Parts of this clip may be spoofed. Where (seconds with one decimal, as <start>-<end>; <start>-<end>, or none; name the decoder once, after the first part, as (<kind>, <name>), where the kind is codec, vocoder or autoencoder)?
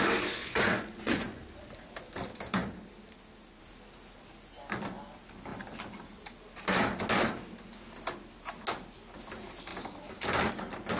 0.4-1.4 (vocoder, Vocos)